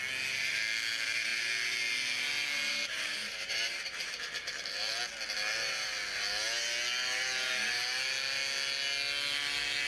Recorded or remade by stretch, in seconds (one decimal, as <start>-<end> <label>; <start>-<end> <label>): 0.0-2.7 recorded; 2.7-5.0 remade; 5.0-9.9 recorded